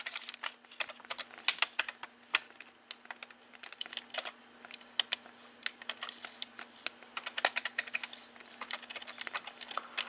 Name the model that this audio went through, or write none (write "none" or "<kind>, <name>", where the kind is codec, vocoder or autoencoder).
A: none